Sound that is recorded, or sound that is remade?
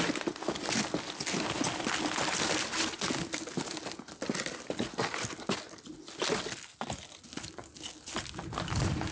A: recorded